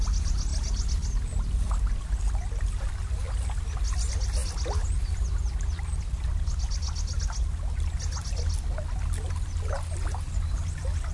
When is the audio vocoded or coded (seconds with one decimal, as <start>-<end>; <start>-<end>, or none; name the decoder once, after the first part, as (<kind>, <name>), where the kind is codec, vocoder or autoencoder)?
none